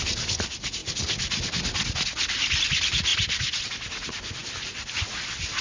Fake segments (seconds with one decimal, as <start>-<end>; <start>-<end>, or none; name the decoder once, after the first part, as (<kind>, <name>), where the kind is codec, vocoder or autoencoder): none